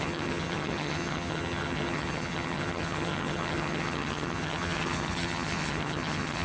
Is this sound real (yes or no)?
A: no